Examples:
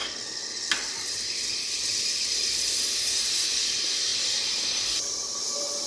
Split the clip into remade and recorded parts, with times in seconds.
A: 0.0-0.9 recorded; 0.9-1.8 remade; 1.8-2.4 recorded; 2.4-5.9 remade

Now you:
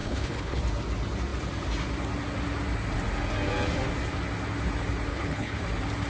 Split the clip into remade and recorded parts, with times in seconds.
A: 0.0-0.6 remade; 0.6-5.1 recorded; 5.1-5.6 remade; 5.6-6.1 recorded

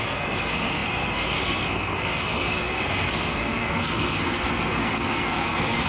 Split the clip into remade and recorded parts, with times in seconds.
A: 0.0-5.9 remade

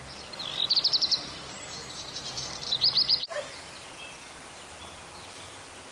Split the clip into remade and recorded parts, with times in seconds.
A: 0.0-5.9 remade

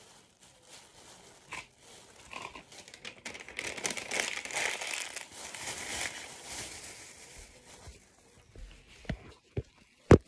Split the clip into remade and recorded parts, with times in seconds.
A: 0.0-10.3 recorded